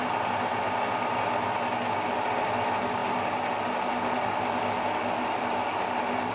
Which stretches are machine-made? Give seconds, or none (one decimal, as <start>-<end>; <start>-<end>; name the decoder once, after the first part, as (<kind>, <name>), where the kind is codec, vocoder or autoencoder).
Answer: none